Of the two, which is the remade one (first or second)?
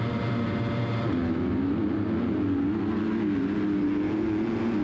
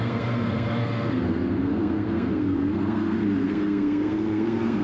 second